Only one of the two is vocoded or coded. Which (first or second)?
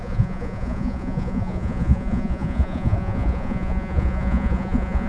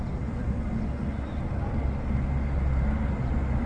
first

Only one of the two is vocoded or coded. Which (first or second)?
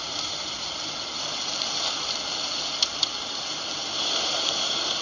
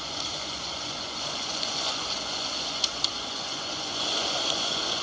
second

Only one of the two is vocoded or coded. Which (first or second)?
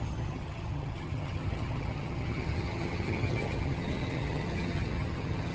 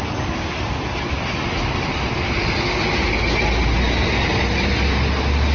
first